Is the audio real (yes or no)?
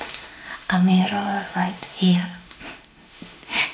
no